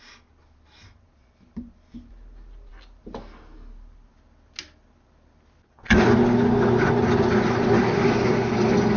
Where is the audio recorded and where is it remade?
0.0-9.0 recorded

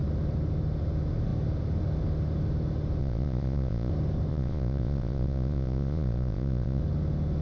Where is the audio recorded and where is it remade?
0.0-3.0 recorded; 3.0-3.9 remade; 3.9-4.3 recorded; 4.3-6.8 remade; 6.8-7.4 recorded